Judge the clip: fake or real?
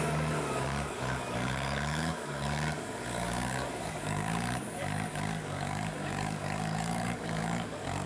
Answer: fake